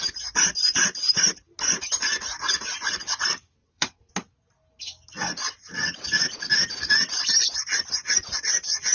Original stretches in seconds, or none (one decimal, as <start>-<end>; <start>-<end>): 0.0-3.6; 4.1-8.9